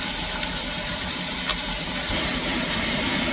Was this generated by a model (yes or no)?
yes